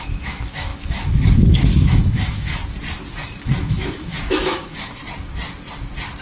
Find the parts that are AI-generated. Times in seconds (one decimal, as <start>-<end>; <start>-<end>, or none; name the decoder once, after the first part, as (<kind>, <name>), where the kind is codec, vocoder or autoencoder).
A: 0.0-2.6 (autoencoder, DAC-VAE); 3.4-5.0